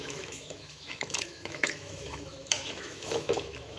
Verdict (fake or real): fake